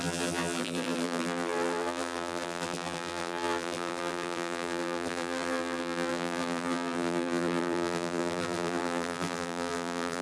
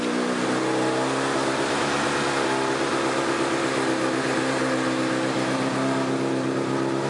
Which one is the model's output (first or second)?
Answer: first